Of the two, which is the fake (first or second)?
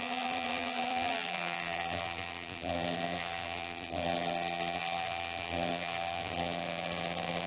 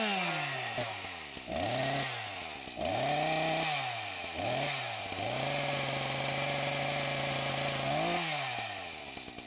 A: first